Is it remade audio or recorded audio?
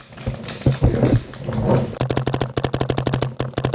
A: recorded